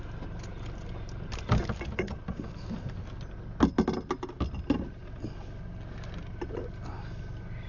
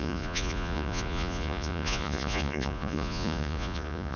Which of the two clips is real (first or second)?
first